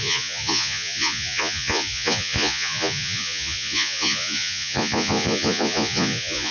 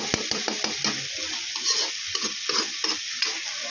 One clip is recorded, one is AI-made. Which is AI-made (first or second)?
first